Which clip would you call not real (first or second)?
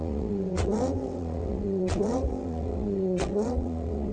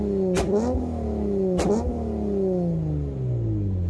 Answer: first